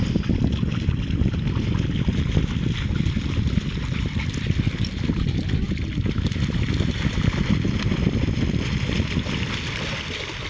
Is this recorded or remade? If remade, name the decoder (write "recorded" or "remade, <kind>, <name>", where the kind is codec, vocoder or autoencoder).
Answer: recorded